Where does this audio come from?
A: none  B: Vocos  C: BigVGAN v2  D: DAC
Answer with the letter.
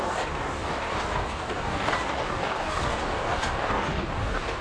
D